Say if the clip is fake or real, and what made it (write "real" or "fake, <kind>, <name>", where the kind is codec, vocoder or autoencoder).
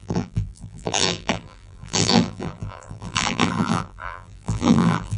fake, vocoder, BigVGAN v2